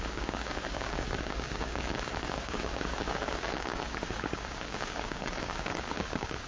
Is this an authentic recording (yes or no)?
no